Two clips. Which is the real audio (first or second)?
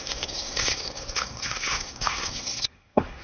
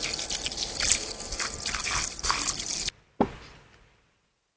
second